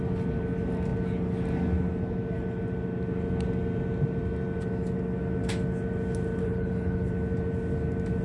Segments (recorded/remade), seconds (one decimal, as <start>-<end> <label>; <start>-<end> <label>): 0.0-6.4 recorded; 6.4-7.1 remade; 7.1-8.2 recorded